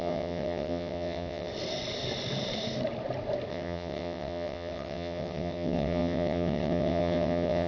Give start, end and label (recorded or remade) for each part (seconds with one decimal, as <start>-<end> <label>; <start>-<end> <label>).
0.0-1.5 remade; 1.5-3.5 recorded; 3.5-7.7 remade